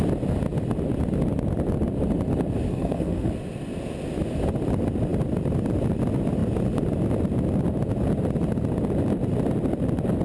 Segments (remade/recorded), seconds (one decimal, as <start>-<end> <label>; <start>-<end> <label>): 0.0-2.7 recorded; 2.7-3.3 remade; 3.3-10.2 recorded